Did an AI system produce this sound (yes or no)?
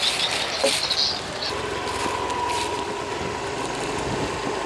no